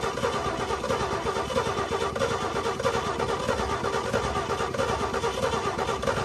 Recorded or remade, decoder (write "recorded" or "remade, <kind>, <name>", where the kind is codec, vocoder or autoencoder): recorded